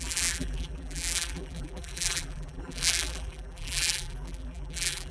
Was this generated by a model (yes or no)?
yes